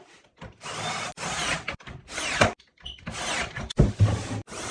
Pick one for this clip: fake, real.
real